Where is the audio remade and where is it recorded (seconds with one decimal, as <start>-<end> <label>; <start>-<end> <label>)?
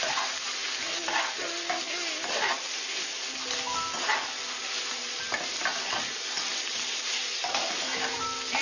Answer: 0.0-8.6 recorded